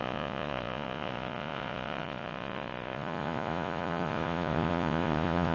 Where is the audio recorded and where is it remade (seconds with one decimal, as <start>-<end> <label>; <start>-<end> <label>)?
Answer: 0.0-5.5 remade